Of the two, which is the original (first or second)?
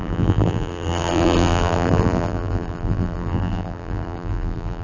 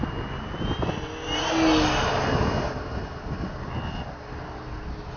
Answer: second